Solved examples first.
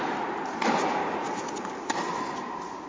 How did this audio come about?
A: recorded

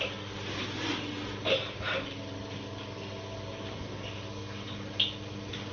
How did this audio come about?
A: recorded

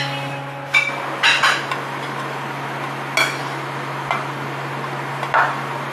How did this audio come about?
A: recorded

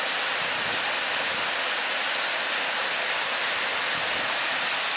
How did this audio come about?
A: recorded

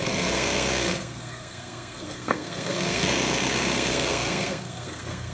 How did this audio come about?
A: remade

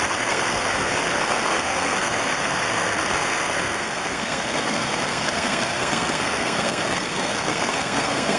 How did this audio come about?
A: remade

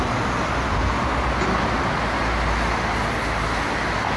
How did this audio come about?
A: recorded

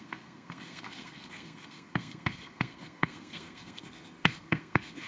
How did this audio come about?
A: remade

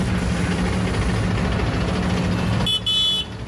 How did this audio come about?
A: recorded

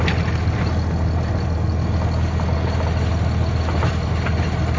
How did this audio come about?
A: recorded